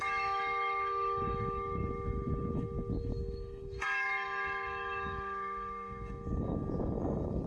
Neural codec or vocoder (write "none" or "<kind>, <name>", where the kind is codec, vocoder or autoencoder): autoencoder, DAC-VAE